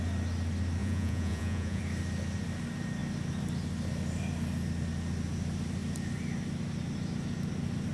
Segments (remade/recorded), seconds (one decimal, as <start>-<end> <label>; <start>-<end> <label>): 0.0-0.8 recorded; 0.8-1.8 remade; 1.8-7.9 recorded